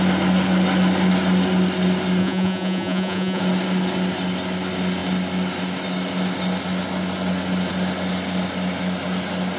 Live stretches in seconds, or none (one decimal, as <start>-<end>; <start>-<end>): 0.0-2.2; 3.4-9.6